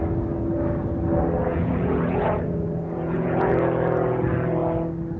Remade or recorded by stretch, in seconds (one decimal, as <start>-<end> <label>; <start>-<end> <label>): 0.0-1.5 recorded; 1.5-3.5 remade; 3.5-5.2 recorded